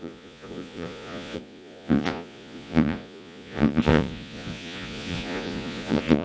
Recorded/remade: remade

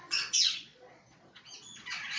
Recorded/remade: remade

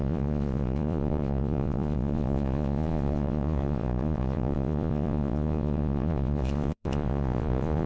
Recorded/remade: remade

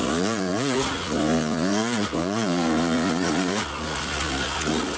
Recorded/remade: remade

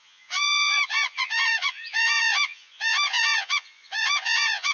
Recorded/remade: remade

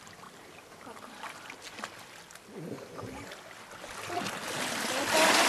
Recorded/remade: recorded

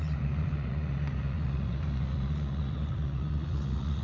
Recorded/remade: remade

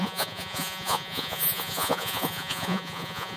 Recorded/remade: remade